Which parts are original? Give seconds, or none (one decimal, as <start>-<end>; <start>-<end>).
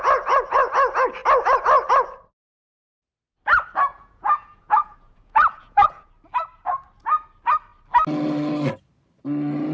0.0-3.9; 6.1-9.7